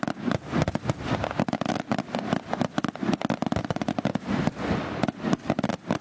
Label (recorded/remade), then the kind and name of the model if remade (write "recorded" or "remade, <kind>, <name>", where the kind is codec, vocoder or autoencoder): recorded